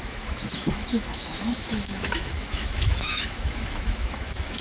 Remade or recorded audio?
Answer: remade